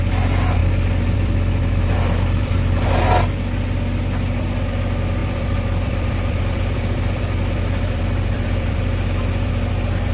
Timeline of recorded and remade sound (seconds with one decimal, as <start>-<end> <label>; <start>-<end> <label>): 0.0-0.6 recorded; 0.6-2.5 remade; 2.5-5.2 recorded; 5.2-8.8 remade; 8.8-10.1 recorded